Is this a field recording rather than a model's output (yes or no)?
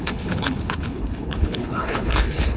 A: no